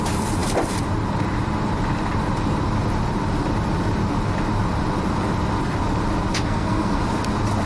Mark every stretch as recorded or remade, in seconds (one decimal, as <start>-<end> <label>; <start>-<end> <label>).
0.0-6.3 recorded; 6.3-7.0 remade; 7.0-7.7 recorded